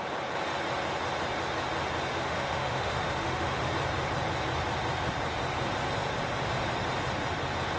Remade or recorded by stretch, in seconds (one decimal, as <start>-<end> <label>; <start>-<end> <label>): 0.0-2.1 recorded; 2.1-3.7 remade; 3.7-7.8 recorded